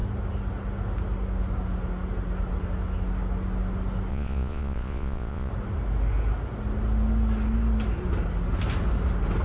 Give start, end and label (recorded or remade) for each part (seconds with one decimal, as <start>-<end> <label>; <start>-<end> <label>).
0.0-4.1 recorded; 4.1-5.5 remade; 5.5-9.4 recorded